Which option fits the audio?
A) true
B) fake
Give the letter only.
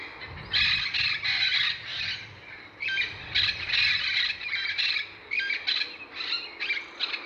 A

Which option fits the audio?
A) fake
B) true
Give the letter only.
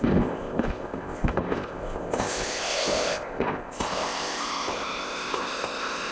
A